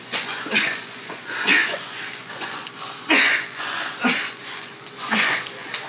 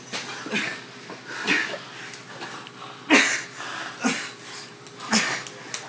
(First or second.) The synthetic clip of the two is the first